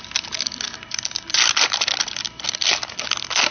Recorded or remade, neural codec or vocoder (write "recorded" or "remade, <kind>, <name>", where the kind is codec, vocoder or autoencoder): recorded